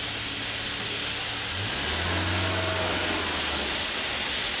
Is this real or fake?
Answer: real